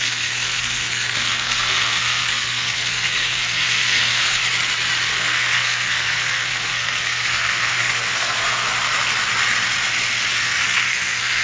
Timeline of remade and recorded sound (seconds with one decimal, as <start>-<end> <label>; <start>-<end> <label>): 0.0-4.4 remade; 4.4-5.1 recorded; 5.1-8.7 remade; 8.7-10.3 recorded; 10.3-11.4 remade